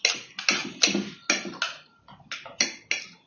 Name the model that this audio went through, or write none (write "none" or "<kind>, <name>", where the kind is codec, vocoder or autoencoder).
none